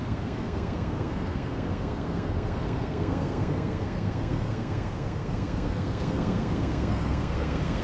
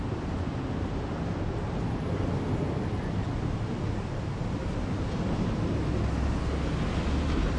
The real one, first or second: second